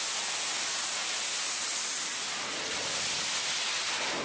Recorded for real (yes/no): yes